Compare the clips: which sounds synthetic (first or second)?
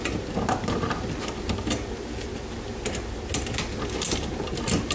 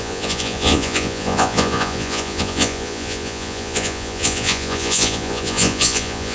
second